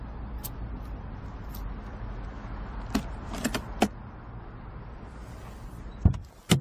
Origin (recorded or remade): recorded